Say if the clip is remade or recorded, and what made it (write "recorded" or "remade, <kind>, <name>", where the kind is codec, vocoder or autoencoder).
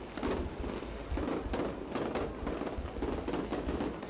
recorded